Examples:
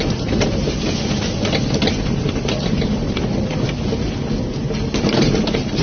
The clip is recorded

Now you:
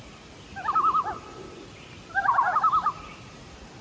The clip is recorded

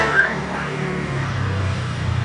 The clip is remade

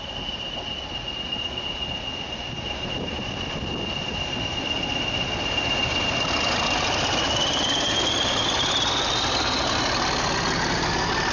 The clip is recorded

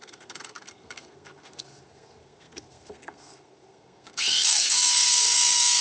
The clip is remade